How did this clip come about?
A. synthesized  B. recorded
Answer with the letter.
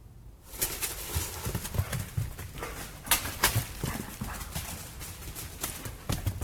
B